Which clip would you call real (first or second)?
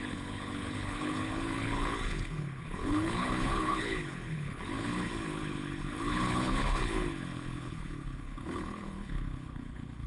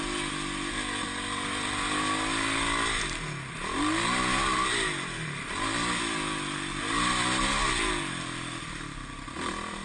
second